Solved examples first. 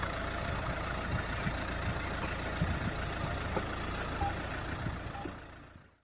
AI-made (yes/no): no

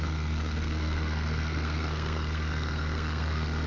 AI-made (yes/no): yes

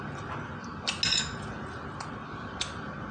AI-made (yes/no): no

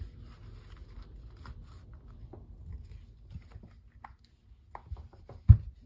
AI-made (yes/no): no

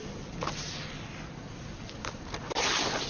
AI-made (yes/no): no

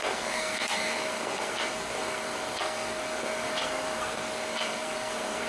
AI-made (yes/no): yes